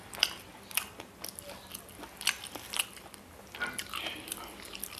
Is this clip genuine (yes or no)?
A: yes